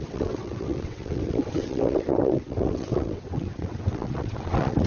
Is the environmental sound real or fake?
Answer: fake